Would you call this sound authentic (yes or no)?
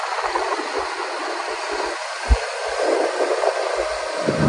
yes